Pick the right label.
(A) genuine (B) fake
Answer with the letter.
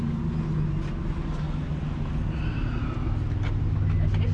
A